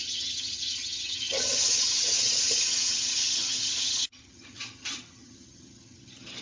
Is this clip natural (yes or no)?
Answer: no